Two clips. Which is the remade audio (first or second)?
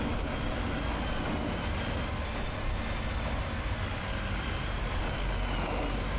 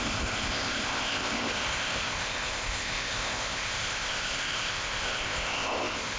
second